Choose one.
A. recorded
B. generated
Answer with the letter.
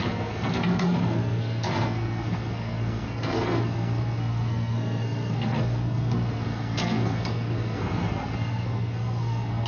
B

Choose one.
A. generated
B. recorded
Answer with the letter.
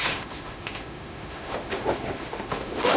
A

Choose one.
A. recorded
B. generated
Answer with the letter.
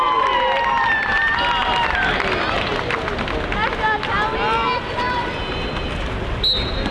A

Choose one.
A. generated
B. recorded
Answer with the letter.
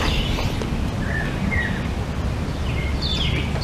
B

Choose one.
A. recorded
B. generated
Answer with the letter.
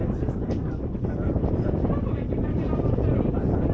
A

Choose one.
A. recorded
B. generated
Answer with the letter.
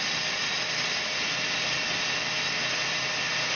A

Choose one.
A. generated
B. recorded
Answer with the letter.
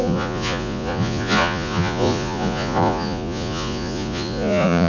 A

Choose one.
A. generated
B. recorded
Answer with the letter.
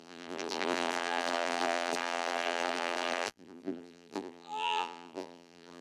A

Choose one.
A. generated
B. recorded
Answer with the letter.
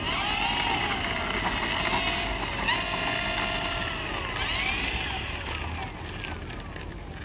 B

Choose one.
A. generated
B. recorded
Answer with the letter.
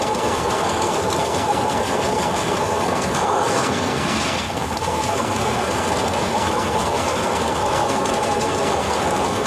A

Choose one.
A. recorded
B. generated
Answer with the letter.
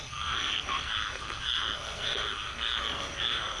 B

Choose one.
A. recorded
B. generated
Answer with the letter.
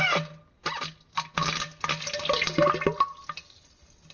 A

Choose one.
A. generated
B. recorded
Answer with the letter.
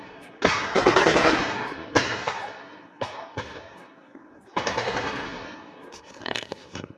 A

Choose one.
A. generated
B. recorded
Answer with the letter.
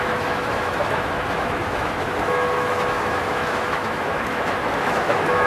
A